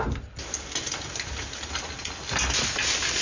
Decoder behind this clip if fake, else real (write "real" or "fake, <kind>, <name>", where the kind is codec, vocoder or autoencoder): real